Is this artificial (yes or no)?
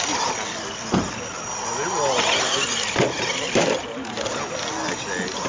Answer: no